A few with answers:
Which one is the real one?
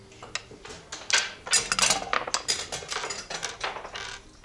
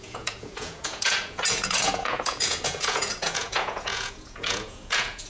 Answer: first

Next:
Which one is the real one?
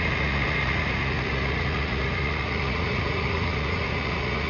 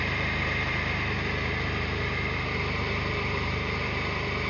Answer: second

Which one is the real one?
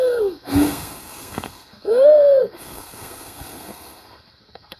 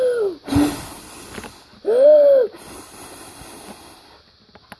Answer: second